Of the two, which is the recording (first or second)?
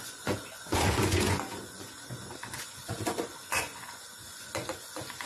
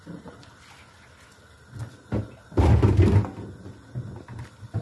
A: second